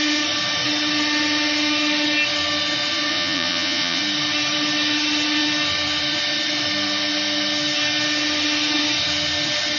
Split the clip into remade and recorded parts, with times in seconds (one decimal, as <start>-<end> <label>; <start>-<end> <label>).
0.0-3.1 recorded; 3.1-4.0 remade; 4.0-9.8 recorded